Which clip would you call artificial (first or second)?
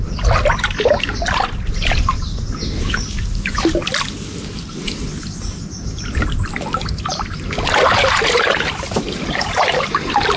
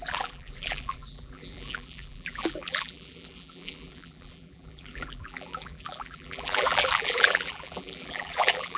second